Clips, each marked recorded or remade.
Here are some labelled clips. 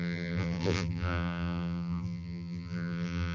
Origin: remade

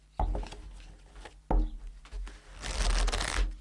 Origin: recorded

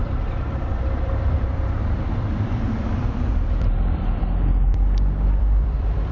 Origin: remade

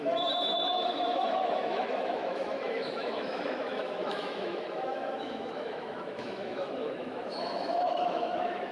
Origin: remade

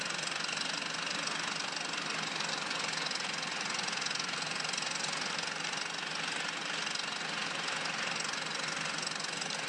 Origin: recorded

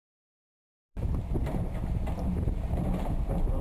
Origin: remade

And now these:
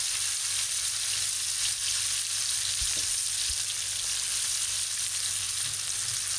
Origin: recorded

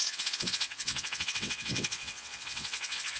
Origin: remade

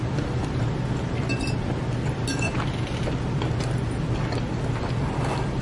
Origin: recorded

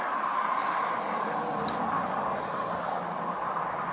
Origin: recorded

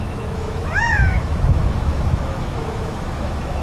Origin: remade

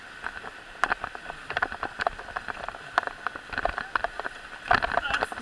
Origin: recorded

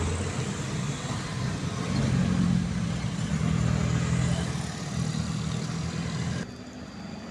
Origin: recorded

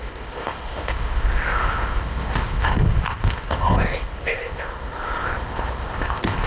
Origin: remade